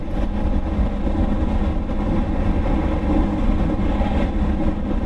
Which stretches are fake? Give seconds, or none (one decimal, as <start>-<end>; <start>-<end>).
none